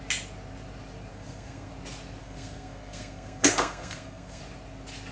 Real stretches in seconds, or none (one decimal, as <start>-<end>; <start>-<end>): 0.0-1.1; 1.7-2.2; 4.4-5.1